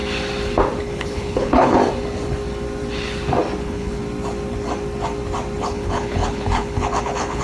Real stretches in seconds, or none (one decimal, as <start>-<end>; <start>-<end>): 0.0-0.8; 1.8-3.6; 4.0-5.6